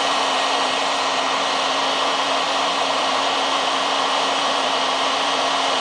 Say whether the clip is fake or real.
fake